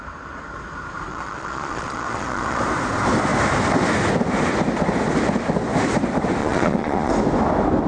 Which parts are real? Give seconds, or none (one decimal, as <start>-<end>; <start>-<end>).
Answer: 0.0-1.1; 2.6-6.4; 7.1-7.9